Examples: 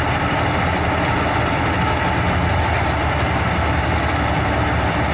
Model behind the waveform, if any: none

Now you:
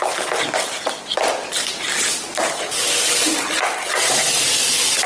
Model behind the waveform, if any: none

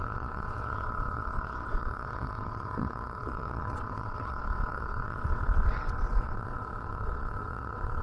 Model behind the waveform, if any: vocoder, WaveNeXt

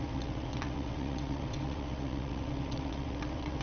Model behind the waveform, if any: vocoder, WaveNeXt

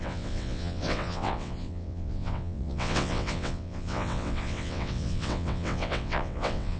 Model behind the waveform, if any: vocoder, WaveNeXt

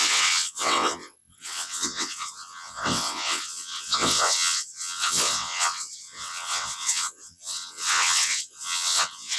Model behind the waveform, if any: vocoder, WaveNeXt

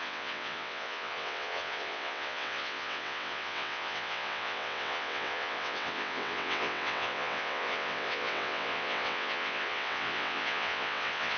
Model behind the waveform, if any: vocoder, WaveNeXt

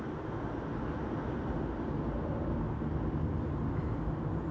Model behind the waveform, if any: none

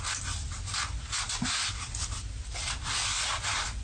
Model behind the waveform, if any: none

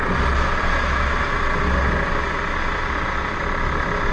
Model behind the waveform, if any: none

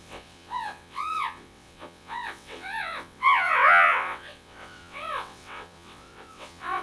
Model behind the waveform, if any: vocoder, WaveNeXt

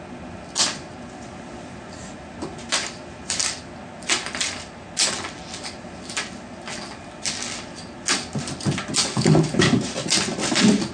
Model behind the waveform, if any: none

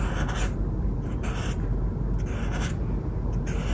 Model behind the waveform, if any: none